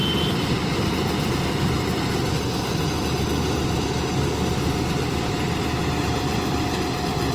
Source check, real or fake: fake